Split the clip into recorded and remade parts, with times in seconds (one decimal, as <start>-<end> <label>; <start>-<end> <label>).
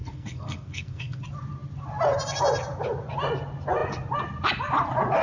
0.0-1.2 remade; 1.2-5.2 recorded